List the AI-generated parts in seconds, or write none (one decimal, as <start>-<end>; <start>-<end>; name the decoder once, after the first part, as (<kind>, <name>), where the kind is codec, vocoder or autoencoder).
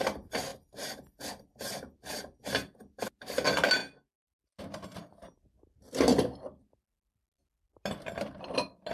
none